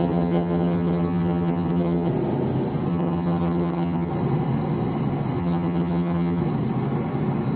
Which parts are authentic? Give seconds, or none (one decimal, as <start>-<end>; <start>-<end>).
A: 2.1-2.9; 4.1-5.4; 6.4-7.6